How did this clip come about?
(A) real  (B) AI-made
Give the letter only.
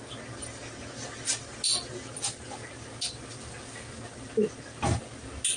A